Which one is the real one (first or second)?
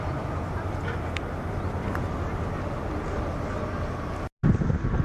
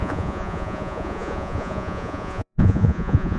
first